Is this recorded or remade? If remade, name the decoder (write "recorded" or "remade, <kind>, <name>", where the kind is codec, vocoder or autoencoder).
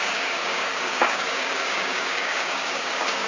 remade, codec, DAC